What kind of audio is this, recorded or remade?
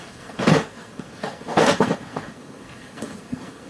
remade